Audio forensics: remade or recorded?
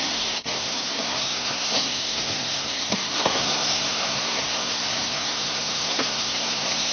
remade